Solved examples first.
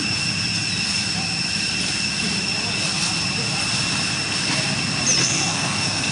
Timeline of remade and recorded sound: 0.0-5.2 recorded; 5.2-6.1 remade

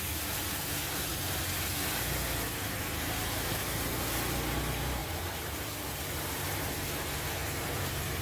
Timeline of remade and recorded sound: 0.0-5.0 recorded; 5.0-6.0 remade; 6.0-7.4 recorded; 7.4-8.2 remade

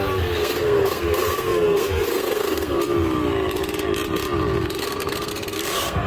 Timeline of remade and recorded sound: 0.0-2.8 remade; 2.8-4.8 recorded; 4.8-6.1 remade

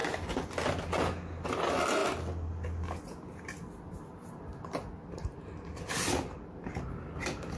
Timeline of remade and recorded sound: 0.0-7.6 recorded

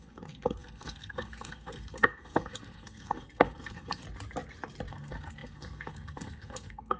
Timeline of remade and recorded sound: 0.0-4.0 remade; 4.0-4.9 recorded; 4.9-7.0 remade

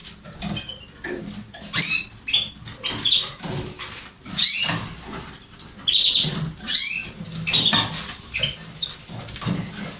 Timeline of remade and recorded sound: 0.0-10.0 recorded

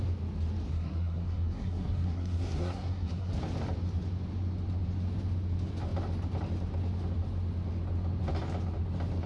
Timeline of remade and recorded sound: 0.0-0.7 recorded; 0.7-3.3 remade; 3.3-9.3 recorded